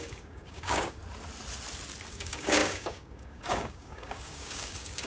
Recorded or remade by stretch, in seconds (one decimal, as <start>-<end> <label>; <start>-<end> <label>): 0.0-1.0 remade; 1.0-2.1 recorded; 2.1-5.1 remade